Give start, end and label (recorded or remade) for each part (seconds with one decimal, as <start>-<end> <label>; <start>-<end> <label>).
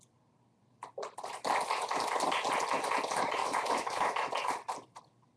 0.0-3.4 recorded; 3.4-4.3 remade; 4.3-5.4 recorded